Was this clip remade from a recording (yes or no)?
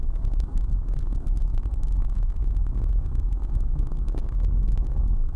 yes